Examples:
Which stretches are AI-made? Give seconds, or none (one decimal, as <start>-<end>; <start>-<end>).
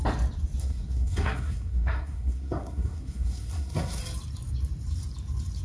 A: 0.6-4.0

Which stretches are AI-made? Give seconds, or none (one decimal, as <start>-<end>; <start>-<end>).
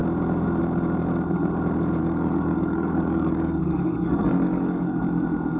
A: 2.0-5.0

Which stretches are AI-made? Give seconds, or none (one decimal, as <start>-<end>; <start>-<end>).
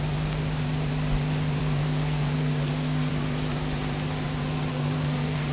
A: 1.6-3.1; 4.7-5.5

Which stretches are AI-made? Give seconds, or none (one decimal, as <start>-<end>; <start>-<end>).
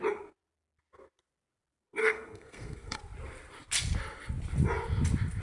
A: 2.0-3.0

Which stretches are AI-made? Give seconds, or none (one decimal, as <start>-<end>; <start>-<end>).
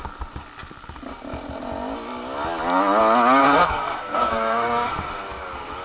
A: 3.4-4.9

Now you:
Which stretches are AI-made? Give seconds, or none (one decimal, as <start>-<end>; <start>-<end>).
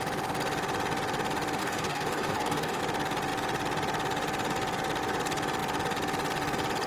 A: 1.6-2.8